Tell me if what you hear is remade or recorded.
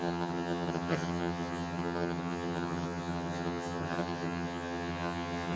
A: remade